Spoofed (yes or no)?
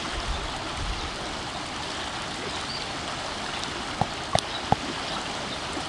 no